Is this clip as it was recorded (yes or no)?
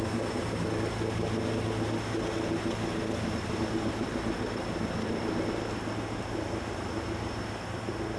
yes